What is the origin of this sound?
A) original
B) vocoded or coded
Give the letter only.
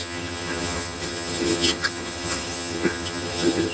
B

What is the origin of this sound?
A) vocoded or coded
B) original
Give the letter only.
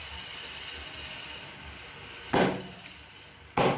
B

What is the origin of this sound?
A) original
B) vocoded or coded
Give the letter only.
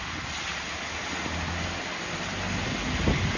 A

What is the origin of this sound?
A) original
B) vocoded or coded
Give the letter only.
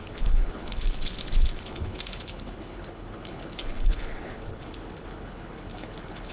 B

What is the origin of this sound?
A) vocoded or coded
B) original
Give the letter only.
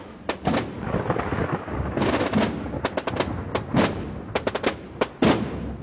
B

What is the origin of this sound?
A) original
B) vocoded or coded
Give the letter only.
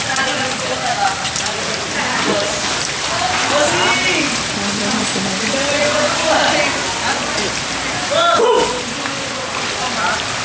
A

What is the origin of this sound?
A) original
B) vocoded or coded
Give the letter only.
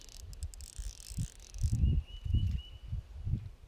A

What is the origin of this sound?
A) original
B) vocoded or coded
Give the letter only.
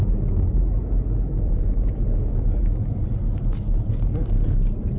A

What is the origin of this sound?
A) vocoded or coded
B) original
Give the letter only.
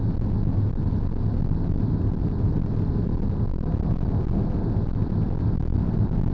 B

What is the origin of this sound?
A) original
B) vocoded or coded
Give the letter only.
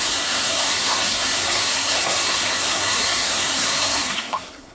B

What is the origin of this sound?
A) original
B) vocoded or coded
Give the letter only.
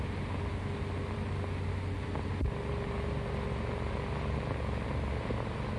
A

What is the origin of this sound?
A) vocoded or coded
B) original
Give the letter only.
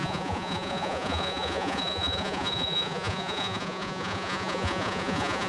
A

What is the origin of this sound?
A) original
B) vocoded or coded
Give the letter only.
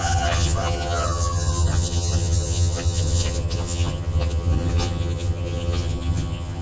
B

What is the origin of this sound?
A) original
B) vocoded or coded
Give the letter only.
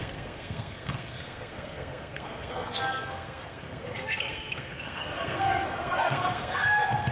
B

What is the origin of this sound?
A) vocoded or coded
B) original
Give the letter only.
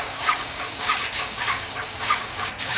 A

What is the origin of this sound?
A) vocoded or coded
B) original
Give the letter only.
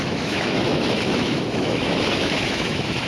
A